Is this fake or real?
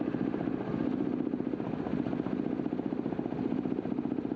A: real